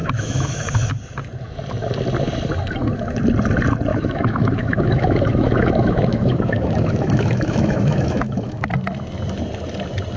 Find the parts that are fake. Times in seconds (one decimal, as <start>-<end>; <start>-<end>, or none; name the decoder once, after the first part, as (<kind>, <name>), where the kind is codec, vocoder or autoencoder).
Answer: 0.0-0.9 (autoencoder, DAC-VAE); 3.9-8.7